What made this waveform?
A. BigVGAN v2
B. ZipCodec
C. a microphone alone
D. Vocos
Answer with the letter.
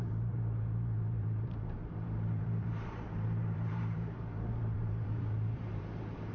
A